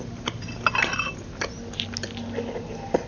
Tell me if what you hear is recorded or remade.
recorded